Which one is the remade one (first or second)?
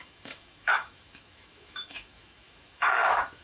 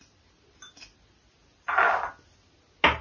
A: first